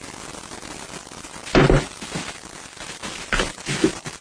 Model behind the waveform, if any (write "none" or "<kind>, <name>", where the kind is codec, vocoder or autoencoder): none